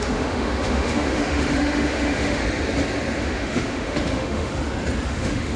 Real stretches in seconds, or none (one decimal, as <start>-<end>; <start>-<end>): 2.4-3.2; 4.5-5.1